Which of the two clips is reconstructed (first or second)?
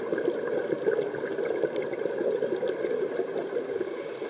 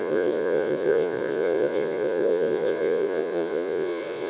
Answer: second